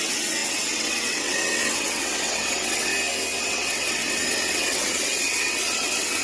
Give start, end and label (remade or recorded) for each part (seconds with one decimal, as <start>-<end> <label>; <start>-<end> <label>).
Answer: 0.0-2.9 remade; 2.9-3.4 recorded; 3.4-6.2 remade